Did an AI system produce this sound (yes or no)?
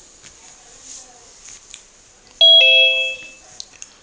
no